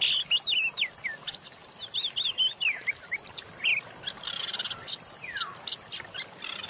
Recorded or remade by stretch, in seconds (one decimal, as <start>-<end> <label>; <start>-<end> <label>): 0.0-6.7 recorded